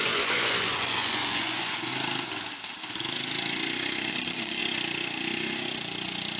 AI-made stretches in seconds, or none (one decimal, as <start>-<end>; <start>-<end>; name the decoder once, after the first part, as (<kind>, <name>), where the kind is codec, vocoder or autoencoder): 0.0-1.9 (vocoder, Vocos); 4.1-4.6